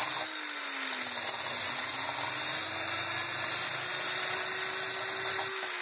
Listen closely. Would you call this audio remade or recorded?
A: recorded